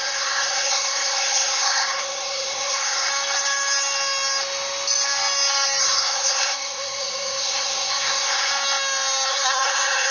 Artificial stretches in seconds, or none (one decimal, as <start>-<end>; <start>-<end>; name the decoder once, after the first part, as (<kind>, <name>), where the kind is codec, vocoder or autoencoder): 0.0-3.1 (codec, SNAC); 5.8-8.5; 9.3-10.1